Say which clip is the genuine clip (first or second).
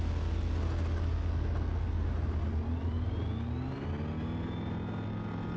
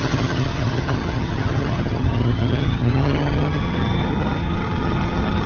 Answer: first